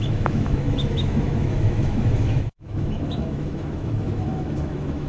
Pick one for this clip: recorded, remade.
remade